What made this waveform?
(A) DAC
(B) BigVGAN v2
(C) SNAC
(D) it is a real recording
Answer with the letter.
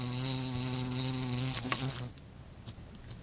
D